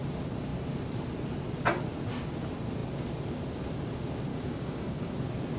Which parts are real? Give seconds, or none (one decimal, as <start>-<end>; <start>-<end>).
0.0-4.3; 5.1-5.6